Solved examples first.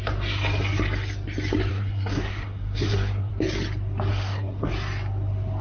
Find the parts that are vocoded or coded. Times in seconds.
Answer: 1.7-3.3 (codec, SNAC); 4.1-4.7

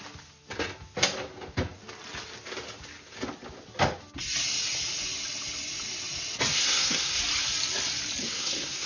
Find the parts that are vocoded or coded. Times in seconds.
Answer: 6.5-7.2 (codec, SNAC); 8.2-8.9

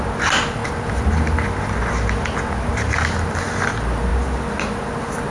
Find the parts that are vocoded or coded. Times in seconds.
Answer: none

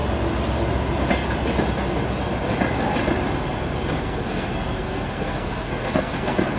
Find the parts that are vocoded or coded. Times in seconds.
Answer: 4.0-6.6 (codec, SNAC)

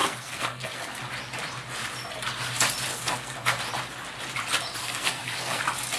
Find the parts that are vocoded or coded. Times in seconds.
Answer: 0.0-1.0 (codec, SNAC); 2.9-3.6; 4.8-5.6

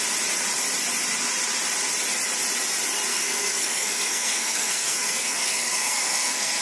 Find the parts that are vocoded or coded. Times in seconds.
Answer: 3.1-6.6 (codec, SNAC)

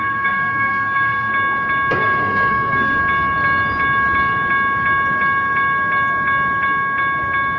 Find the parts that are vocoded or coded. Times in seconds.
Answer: 0.0-1.3 (codec, SNAC); 1.9-3.0